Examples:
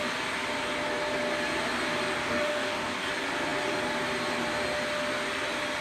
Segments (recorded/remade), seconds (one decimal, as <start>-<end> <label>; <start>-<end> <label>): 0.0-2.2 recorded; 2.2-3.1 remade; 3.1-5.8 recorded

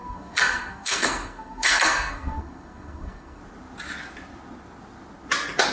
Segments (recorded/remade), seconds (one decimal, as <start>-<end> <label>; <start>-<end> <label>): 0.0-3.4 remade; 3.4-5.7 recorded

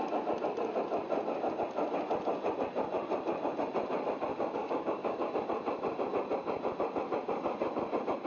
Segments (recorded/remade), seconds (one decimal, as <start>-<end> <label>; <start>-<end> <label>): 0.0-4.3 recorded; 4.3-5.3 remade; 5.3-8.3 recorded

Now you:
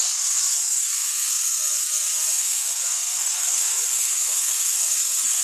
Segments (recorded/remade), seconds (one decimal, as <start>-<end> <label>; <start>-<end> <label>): 0.0-5.4 remade